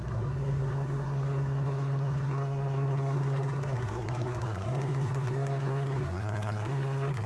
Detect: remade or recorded remade